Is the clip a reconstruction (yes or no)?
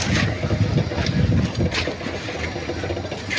no